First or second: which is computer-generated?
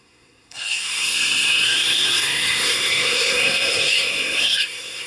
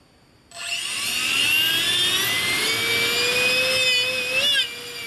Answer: first